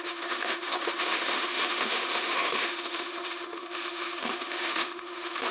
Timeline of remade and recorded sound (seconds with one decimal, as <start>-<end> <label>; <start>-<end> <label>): 0.0-5.5 remade